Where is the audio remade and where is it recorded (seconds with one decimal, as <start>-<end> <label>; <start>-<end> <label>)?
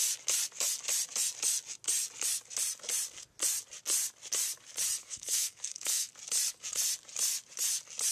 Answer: 0.0-5.0 recorded; 5.0-6.1 remade; 6.1-8.1 recorded